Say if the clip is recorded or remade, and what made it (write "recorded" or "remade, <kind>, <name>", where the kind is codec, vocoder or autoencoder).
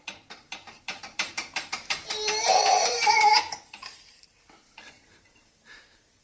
remade, vocoder, BigVGAN v2